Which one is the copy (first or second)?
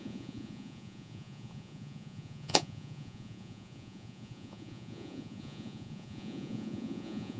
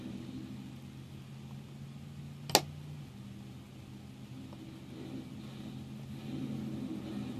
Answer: first